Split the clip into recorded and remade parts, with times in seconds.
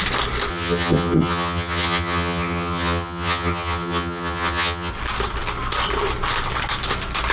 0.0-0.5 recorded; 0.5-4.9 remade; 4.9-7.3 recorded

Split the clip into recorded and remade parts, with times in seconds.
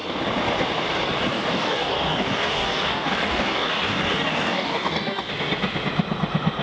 0.0-1.3 recorded; 1.3-5.3 remade; 5.3-6.6 recorded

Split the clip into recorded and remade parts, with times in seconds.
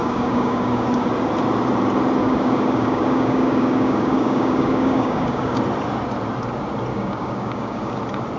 0.0-1.1 remade; 1.1-2.2 recorded; 2.2-5.6 remade; 5.6-6.9 recorded; 6.9-8.0 remade; 8.0-8.4 recorded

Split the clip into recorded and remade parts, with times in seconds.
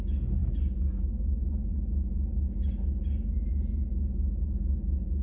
0.0-5.2 recorded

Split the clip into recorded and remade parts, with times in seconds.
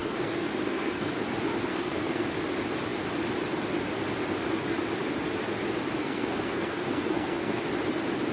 0.0-1.1 remade; 1.1-1.7 recorded; 1.7-2.4 remade; 2.4-6.0 recorded; 6.0-7.6 remade; 7.6-8.3 recorded